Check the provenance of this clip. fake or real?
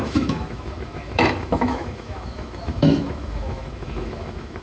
fake